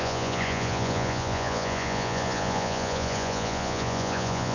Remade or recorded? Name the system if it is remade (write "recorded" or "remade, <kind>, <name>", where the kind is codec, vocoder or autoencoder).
remade, vocoder, Vocos